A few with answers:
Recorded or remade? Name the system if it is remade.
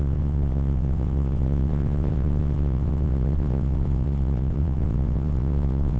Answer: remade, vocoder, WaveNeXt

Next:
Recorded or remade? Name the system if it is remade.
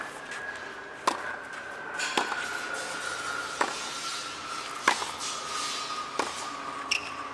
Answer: recorded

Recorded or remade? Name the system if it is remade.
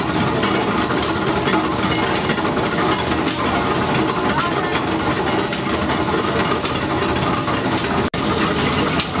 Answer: recorded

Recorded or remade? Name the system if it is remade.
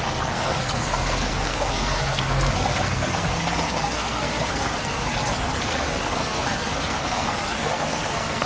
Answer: remade, codec, SNAC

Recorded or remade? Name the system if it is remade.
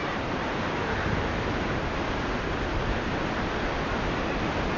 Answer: recorded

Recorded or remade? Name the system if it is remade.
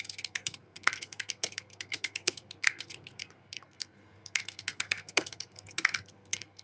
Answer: remade, codec, SNAC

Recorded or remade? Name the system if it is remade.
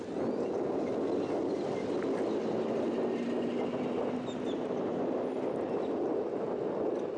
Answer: recorded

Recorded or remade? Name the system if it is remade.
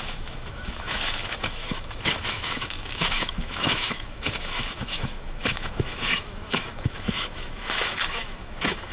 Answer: remade, autoencoder, DAC-VAE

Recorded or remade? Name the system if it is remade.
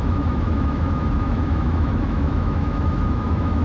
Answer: remade, autoencoder, DAC-VAE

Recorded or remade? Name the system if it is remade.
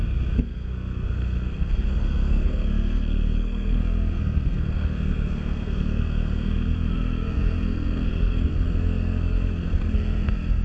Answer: remade, codec, SNAC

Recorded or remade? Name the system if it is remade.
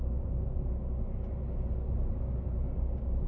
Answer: recorded